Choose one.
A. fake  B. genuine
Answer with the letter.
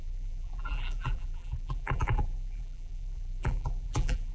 A